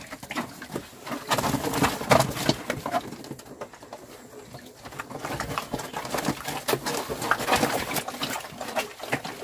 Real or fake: real